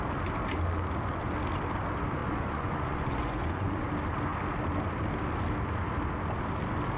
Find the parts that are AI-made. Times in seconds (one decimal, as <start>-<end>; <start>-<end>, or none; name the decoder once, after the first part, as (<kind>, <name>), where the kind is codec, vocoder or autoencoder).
2.2-3.9 (vocoder, Vocos)